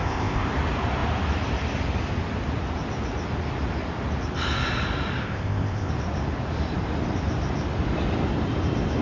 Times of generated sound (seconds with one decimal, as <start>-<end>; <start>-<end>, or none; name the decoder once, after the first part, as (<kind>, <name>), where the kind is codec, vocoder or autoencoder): 0.0-0.5 (codec, ZipCodec); 5.2-5.9